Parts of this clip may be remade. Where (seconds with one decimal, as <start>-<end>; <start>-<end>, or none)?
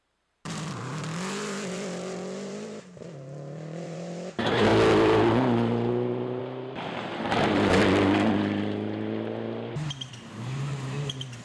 0.0-4.7; 6.4-7.8; 9.7-11.4